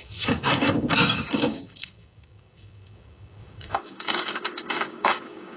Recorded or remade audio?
remade